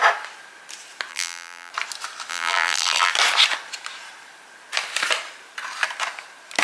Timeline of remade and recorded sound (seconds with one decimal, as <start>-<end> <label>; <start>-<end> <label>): 0.0-1.1 recorded; 1.1-1.7 remade; 1.7-2.3 recorded; 2.3-3.1 remade; 3.1-6.6 recorded